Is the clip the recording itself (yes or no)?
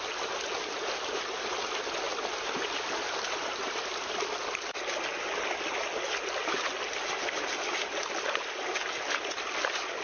yes